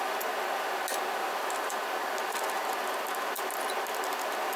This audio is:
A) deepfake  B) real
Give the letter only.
B